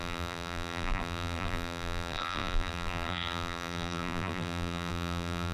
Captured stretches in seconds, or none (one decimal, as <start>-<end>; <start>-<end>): none